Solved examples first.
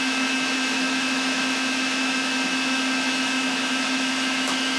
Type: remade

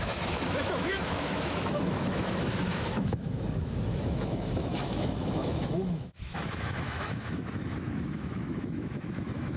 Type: remade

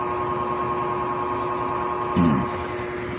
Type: recorded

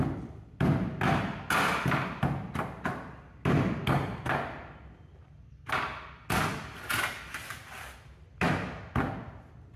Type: recorded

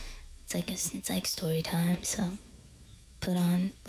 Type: remade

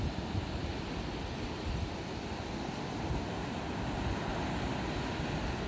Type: recorded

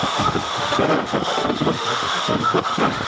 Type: remade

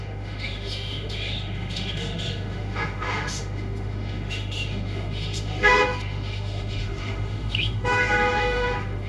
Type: remade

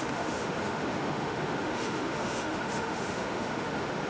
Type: remade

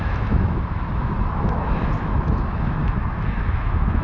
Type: remade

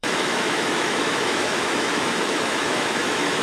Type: remade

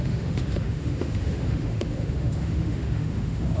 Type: remade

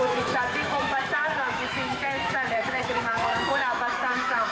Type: remade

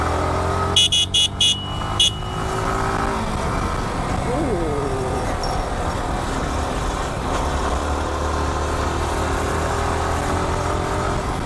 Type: recorded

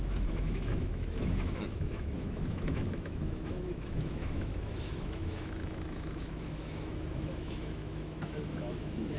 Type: remade